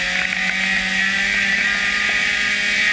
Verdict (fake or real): real